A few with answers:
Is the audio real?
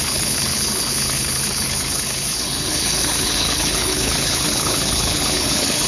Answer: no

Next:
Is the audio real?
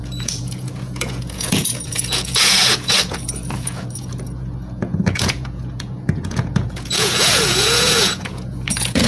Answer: no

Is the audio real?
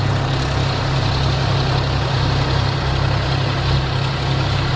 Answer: yes